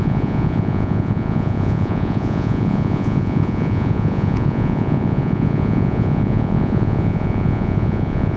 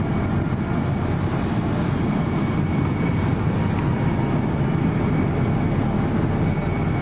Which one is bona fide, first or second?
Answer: second